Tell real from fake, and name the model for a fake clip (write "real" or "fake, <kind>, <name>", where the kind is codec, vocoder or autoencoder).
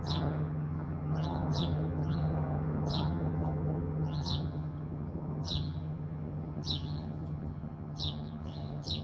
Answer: fake, vocoder, HiFi-GAN